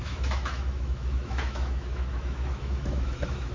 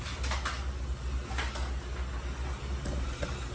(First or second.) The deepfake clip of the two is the first